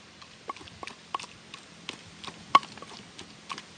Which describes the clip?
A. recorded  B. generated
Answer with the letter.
A